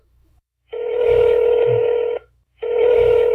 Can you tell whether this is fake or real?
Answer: fake